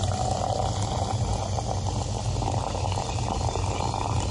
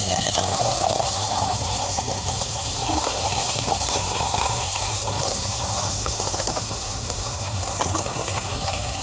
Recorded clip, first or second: first